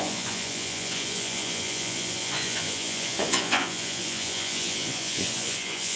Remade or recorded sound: remade